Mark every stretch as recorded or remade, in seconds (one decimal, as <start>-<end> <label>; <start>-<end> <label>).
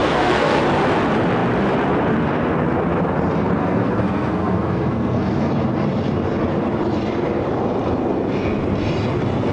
0.0-0.6 remade; 0.6-3.6 recorded; 3.6-5.5 remade; 5.5-9.5 recorded